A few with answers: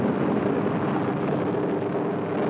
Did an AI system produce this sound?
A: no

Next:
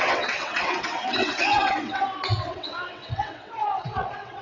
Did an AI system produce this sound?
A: yes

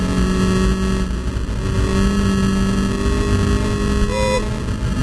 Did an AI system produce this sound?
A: no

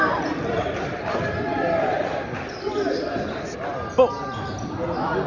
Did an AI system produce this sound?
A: yes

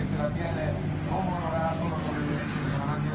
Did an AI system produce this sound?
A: no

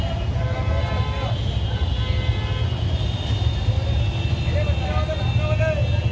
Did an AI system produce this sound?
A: no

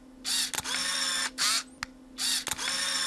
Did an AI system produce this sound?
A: no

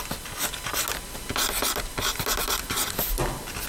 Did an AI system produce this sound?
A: no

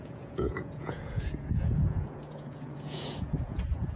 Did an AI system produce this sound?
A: yes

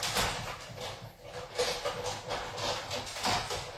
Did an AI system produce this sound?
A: no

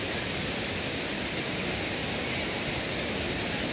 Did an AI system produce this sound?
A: no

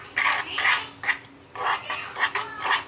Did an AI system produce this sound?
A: no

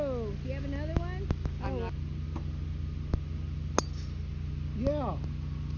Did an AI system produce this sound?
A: no